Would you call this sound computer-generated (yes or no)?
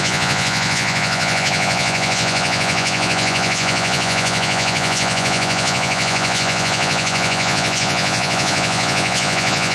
yes